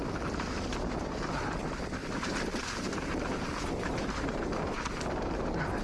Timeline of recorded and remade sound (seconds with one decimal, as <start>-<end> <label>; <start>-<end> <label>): 0.0-2.0 recorded; 2.0-5.8 remade